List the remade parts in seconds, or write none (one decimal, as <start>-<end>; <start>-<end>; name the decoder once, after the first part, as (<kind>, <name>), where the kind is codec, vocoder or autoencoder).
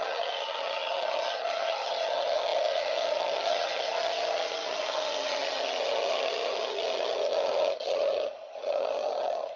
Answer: 0.0-9.6 (vocoder, HiFi-GAN)